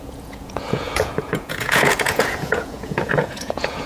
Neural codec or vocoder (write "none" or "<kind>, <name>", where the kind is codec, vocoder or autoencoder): vocoder, Vocos